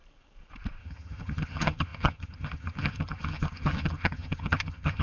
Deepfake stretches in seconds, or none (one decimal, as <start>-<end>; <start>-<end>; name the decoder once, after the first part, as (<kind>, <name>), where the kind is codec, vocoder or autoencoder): 0.8-5.0 (vocoder, HiFi-GAN)